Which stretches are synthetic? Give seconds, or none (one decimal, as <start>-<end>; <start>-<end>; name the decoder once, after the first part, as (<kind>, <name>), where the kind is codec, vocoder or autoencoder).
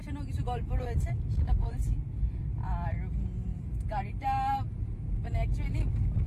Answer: 0.0-2.2 (vocoder, BigVGAN v2); 3.4-5.0